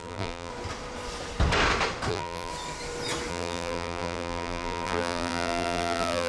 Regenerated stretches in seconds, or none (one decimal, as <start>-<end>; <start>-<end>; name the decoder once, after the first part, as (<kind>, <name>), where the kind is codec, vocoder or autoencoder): 0.0-0.5 (vocoder, BigVGAN v2); 2.1-2.5; 3.3-6.3